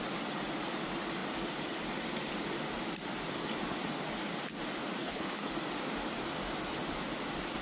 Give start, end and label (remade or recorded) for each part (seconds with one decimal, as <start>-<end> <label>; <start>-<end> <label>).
0.0-5.0 recorded; 5.0-5.5 remade; 5.5-7.6 recorded